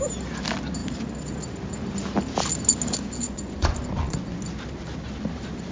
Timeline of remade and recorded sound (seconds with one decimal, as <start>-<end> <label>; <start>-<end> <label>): 0.0-3.2 recorded; 3.2-4.4 remade; 4.4-5.7 recorded